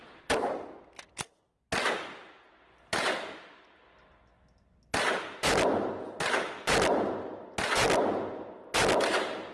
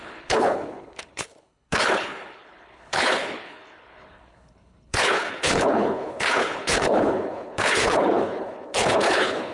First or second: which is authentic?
first